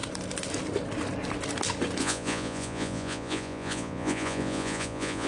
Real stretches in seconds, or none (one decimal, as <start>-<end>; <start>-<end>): 0.0-2.0